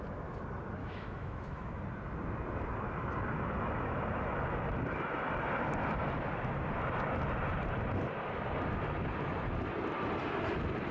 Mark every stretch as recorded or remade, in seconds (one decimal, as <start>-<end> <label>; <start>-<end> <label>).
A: 0.0-0.8 recorded; 0.8-1.8 remade; 1.8-10.9 recorded